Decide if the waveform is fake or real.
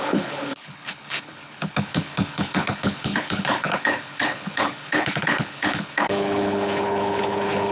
fake